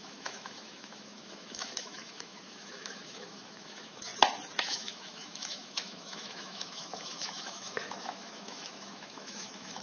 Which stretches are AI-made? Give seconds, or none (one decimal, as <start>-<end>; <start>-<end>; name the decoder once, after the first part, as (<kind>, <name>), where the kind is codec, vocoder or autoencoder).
0.0-4.1 (autoencoder, DAC-VAE); 4.6-9.8